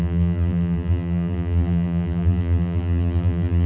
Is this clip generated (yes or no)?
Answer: yes